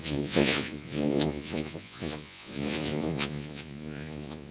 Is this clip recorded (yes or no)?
no